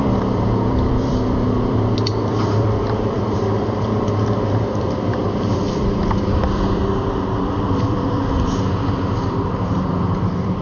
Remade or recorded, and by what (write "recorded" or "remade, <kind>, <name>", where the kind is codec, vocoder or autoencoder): remade, vocoder, BigVGAN v2